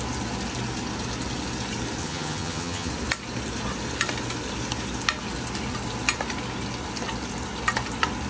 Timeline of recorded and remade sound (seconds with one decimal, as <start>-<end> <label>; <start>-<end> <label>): 0.0-2.0 recorded; 2.0-2.9 remade; 2.9-8.3 recorded